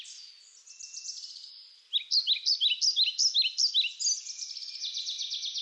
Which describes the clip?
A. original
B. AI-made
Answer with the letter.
A